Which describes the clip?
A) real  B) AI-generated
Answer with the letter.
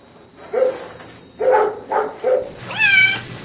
A